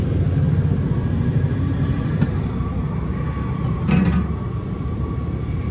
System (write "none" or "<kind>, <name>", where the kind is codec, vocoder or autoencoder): none